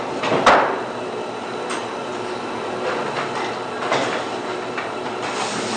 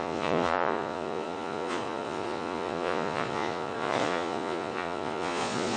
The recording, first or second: first